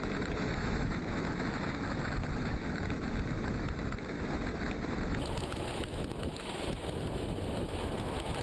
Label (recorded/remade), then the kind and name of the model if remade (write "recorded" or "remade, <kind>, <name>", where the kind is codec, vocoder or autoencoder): remade, autoencoder, DAC-VAE